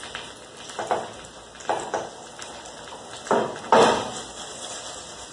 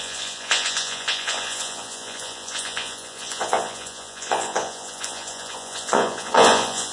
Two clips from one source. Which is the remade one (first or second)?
second